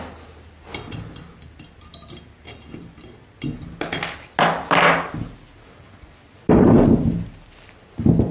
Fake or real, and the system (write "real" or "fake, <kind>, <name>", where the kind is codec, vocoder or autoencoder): real